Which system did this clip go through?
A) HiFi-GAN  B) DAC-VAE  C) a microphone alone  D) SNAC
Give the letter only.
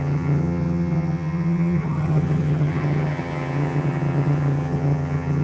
A